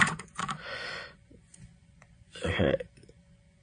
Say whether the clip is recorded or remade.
remade